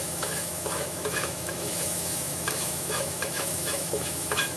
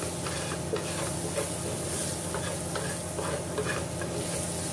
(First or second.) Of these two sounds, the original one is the second